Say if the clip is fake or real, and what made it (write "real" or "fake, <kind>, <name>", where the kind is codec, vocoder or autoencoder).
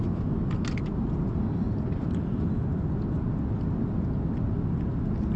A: real